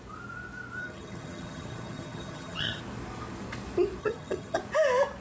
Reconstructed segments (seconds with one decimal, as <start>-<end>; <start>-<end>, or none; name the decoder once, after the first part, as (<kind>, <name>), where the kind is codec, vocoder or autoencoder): 0.8-2.8 (vocoder, HiFi-GAN); 4.0-4.6